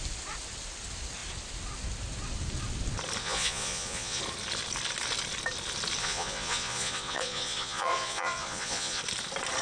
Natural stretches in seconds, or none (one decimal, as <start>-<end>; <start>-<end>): 0.0-3.2; 4.2-6.0; 9.0-9.6